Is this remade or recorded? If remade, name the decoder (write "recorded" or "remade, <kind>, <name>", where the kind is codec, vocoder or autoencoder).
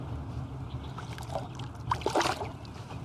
recorded